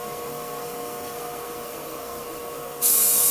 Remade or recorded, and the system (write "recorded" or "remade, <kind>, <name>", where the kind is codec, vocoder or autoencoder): remade, codec, SNAC